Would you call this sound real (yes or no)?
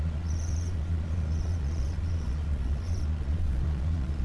no